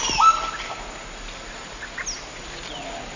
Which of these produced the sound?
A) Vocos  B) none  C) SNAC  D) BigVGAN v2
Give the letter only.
B